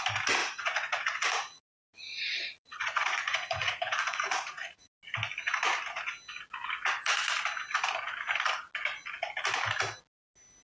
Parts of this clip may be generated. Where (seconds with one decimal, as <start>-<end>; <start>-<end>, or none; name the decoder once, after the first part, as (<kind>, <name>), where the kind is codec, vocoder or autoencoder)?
0.4-5.0 (vocoder, Vocos)